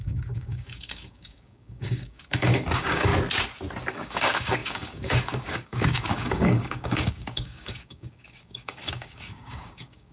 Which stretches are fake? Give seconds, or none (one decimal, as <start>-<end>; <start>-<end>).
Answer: 0.0-3.1; 3.9-10.1